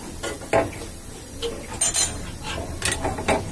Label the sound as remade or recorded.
recorded